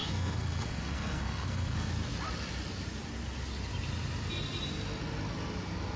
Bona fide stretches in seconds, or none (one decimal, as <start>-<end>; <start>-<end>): 1.9-6.0